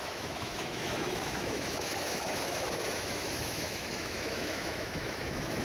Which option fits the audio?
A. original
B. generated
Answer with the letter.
B